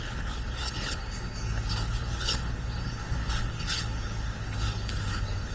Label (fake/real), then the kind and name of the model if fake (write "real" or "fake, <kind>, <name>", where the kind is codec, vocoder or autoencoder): fake, codec, HILCodec